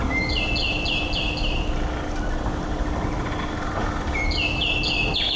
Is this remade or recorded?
recorded